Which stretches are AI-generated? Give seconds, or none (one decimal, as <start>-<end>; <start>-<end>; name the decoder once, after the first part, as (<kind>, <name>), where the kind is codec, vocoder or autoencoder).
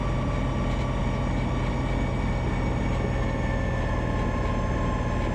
none